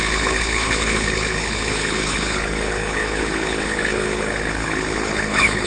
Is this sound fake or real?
fake